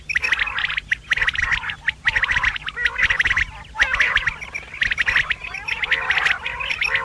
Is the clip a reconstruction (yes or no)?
no